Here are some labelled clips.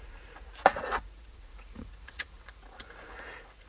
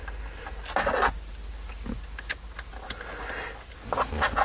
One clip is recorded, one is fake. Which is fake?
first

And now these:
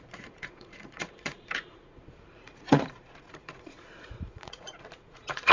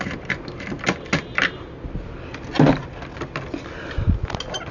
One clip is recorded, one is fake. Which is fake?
first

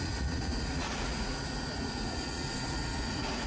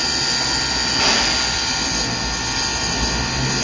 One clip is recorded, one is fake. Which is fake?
first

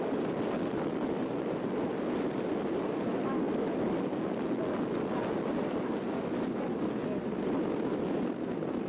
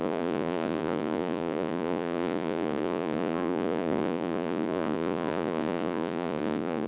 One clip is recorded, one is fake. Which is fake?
second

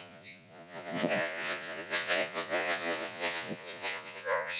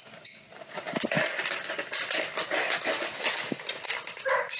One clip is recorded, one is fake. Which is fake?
first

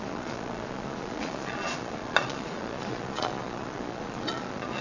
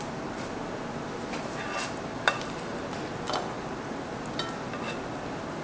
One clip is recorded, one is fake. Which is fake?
first